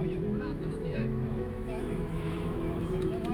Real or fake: fake